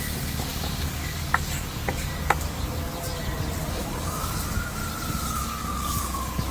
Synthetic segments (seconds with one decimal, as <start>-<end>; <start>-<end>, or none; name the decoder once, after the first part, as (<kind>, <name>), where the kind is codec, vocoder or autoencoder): 0.0-2.9 (codec, DAC); 3.7-4.8; 5.4-6.5